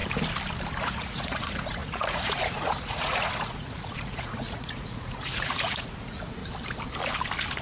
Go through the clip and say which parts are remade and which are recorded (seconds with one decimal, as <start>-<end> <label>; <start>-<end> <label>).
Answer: 0.0-0.8 recorded; 0.8-6.4 remade; 6.4-7.6 recorded

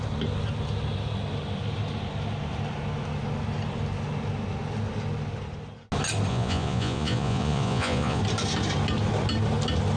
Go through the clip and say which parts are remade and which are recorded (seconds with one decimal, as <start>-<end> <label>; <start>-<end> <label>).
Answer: 0.0-6.3 recorded; 6.3-8.2 remade; 8.2-10.0 recorded

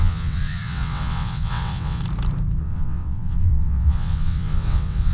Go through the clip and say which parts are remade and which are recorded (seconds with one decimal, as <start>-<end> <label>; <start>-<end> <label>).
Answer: 0.0-2.0 remade; 2.0-2.6 recorded; 2.6-5.1 remade

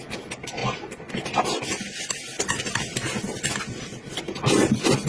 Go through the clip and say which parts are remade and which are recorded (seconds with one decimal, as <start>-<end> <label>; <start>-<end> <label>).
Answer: 0.0-5.1 recorded

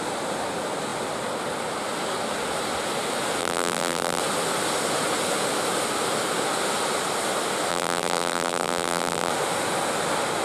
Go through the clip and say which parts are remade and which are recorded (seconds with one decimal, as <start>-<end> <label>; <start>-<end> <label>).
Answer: 0.0-3.4 recorded; 3.4-4.2 remade; 4.2-7.7 recorded; 7.7-9.3 remade; 9.3-10.4 recorded